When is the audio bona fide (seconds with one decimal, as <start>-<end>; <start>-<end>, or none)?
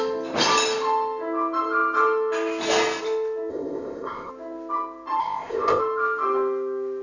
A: 0.0-3.5; 4.3-5.2; 5.8-7.0